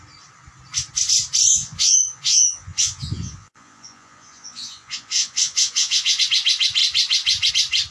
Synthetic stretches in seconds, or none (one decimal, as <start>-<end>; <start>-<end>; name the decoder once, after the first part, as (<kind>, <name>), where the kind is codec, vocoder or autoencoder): 1.5-6.2 (vocoder, Vocos)